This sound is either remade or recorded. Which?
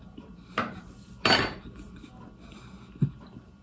recorded